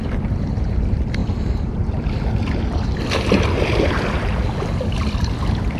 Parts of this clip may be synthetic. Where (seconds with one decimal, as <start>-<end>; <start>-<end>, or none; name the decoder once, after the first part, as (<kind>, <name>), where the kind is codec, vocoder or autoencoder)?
none